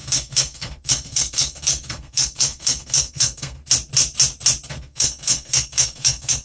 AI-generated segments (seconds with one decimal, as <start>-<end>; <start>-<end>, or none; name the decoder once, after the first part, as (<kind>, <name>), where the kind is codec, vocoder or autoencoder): 0.0-3.6 (codec, SNAC); 4.7-6.4